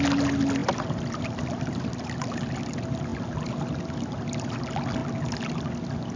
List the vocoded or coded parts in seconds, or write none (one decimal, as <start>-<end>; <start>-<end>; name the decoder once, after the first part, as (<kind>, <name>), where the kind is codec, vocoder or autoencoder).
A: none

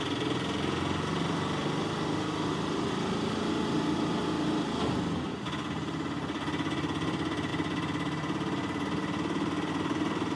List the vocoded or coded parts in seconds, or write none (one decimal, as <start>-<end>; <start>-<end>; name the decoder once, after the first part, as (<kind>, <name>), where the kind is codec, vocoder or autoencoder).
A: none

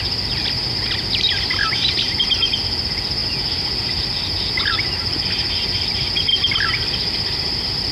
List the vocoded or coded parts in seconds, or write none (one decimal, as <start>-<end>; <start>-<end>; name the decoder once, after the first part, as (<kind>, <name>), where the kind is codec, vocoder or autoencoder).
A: 6.3-7.9 (vocoder, BigVGAN v2)

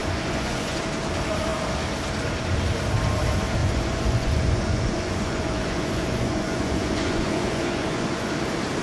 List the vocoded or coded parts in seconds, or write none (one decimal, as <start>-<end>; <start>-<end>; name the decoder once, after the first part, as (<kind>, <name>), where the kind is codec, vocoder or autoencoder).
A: 0.0-0.8 (vocoder, Vocos); 3.6-8.3

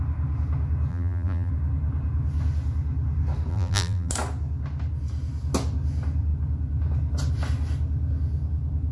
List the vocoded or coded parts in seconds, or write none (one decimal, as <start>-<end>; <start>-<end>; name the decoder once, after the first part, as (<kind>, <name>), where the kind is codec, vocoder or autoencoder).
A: 0.9-1.5 (vocoder, BigVGAN v2); 3.5-4.1

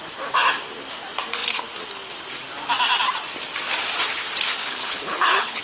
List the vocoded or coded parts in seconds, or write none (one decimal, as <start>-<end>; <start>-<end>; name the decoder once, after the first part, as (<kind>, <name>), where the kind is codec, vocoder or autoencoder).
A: 4.6-5.6 (codec, HILCodec)

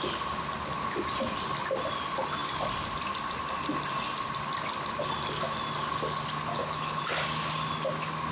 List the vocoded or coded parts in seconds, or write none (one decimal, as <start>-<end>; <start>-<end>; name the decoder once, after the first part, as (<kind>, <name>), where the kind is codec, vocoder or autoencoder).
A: 6.5-7.0 (codec, HILCodec)